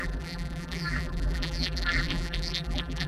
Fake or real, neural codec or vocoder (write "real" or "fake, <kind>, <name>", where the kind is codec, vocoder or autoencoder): fake, vocoder, BigVGAN v2